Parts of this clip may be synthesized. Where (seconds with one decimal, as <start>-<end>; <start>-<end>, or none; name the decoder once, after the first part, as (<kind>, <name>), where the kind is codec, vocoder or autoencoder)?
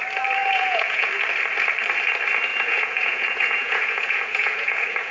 0.4-1.1 (vocoder, Vocos); 2.5-5.1